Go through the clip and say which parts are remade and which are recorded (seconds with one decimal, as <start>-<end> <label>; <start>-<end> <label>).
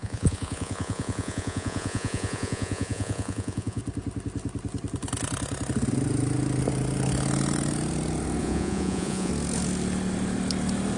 0.0-3.8 remade; 3.8-8.4 recorded; 8.4-9.3 remade; 9.3-11.0 recorded